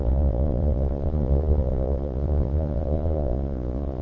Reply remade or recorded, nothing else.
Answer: remade